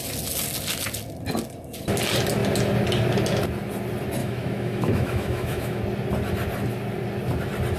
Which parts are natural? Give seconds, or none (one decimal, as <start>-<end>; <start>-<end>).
0.0-4.2; 5.8-7.8